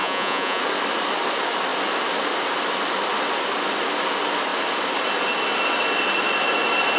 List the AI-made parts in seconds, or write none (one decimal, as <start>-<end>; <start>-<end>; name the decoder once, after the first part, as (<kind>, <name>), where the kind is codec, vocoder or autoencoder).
0.0-0.6 (vocoder, Vocos)